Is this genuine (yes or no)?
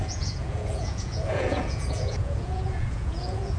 no